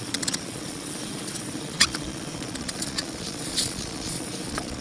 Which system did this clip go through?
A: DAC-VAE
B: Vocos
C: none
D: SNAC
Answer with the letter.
B